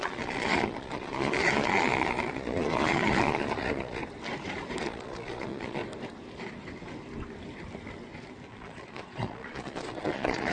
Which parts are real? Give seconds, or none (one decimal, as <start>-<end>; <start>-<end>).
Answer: 4.0-4.8; 5.8-8.5